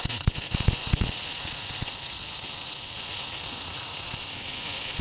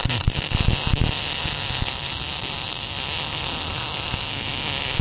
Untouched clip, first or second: second